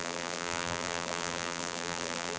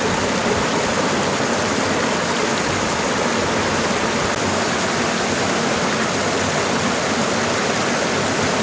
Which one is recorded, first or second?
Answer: second